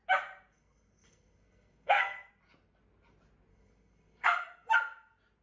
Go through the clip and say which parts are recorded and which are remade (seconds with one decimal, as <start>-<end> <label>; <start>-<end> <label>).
0.0-0.5 recorded; 0.5-2.3 remade; 2.3-3.5 recorded; 3.5-4.7 remade; 4.7-5.4 recorded